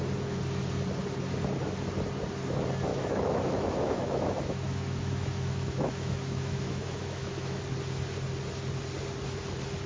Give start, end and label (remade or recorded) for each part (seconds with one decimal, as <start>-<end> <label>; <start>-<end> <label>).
0.0-2.9 recorded; 2.9-7.6 remade; 7.6-9.9 recorded

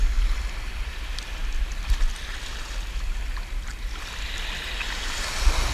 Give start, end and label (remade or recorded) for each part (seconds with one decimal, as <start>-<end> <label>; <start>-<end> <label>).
0.0-5.7 recorded

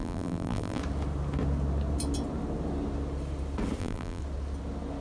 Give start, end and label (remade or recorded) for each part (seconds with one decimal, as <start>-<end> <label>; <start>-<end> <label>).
0.0-0.8 remade; 0.8-3.8 recorded; 3.8-4.2 remade; 4.2-5.0 recorded